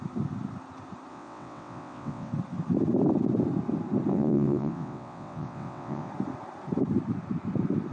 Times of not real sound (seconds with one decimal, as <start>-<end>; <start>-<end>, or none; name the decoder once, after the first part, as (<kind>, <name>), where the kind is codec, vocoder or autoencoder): 1.1-2.3 (vocoder, WaveNeXt); 4.1-6.1

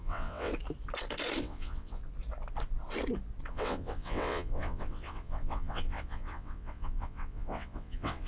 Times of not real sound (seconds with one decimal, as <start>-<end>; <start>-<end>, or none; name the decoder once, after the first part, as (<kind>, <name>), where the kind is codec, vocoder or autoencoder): 0.0-0.5 (vocoder, WaveNeXt); 1.4-2.0; 3.5-8.3